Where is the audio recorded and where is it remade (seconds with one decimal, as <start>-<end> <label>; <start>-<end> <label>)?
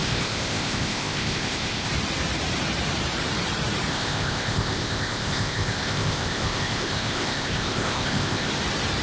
0.0-1.9 remade; 1.9-3.9 recorded; 3.9-8.5 remade; 8.5-9.0 recorded